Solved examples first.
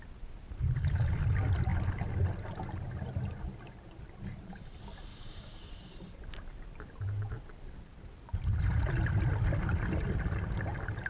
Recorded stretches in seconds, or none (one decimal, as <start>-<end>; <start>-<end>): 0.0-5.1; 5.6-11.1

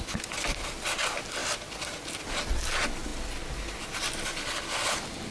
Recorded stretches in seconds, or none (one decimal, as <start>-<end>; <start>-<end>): 0.0-5.3

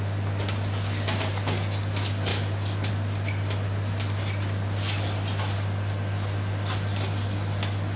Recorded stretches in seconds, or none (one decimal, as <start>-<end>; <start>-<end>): 0.0-8.0